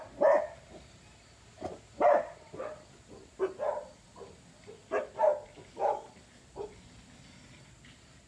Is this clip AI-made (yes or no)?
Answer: no